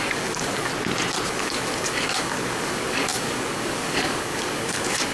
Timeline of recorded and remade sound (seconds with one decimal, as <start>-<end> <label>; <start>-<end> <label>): 0.0-0.7 remade; 0.7-1.3 recorded; 1.3-5.1 remade